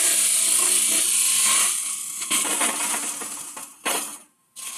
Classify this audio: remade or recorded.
recorded